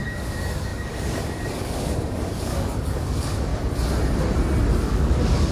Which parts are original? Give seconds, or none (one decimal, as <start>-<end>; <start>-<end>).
3.5-4.7